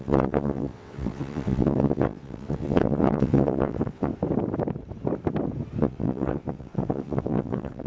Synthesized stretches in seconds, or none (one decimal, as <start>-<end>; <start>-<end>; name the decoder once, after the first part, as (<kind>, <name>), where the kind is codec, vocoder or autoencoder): 0.0-4.1 (vocoder, WaveNeXt); 5.8-7.9